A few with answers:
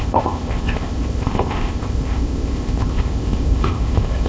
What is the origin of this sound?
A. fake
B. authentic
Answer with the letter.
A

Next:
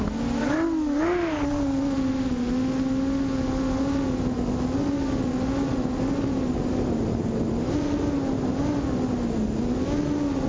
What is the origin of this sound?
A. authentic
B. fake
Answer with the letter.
A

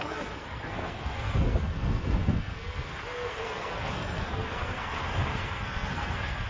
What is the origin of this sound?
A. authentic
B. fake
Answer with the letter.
B